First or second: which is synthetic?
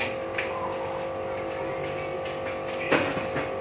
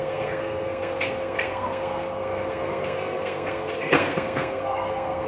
second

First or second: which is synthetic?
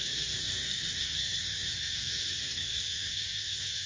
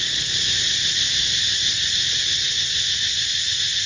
first